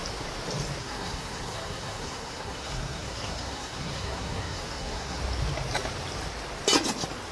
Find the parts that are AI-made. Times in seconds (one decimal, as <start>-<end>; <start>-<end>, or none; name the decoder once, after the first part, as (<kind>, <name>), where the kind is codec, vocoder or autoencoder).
0.8-5.2 (codec, SNAC)